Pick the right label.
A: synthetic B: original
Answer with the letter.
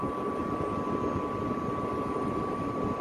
B